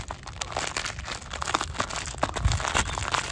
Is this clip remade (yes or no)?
no